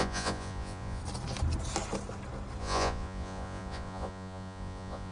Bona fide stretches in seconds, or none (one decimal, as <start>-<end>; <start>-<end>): 1.0-2.6